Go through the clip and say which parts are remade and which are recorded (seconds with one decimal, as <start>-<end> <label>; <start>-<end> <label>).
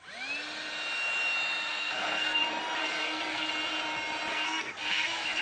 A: 0.0-1.7 recorded; 1.7-2.4 remade; 2.4-2.8 recorded; 2.8-3.5 remade; 3.5-4.3 recorded; 4.3-5.4 remade